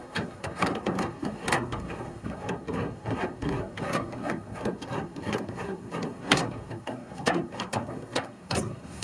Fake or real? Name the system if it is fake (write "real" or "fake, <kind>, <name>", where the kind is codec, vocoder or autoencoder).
fake, codec, SNAC